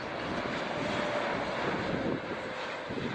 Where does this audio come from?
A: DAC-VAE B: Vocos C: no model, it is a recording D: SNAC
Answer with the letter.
C